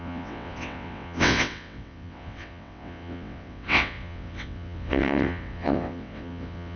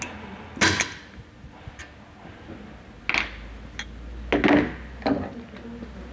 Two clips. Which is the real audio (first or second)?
second